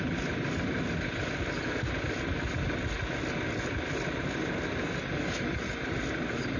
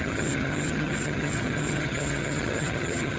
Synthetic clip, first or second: second